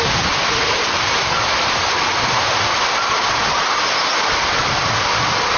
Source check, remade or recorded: recorded